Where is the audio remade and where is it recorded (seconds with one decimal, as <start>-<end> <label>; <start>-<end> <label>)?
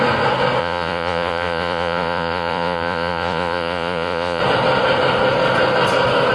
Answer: 0.0-0.6 recorded; 0.6-4.4 remade; 4.4-6.3 recorded